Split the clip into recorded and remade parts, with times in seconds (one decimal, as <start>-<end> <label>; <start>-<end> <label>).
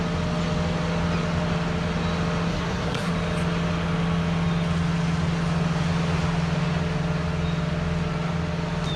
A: 0.0-2.5 recorded; 2.5-3.1 remade; 3.1-9.0 recorded